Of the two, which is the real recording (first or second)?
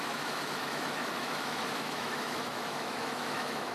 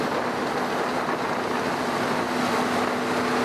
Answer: second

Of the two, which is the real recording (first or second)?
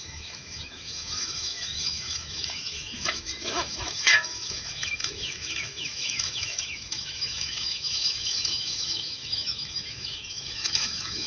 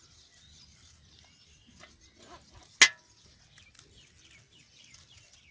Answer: second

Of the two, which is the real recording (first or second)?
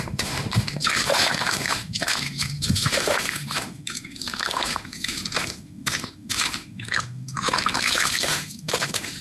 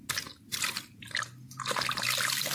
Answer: second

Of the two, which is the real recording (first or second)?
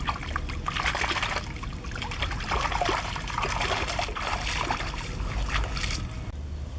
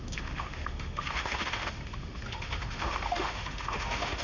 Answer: first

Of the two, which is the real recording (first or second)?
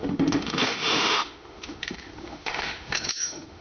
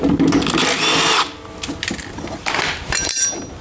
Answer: second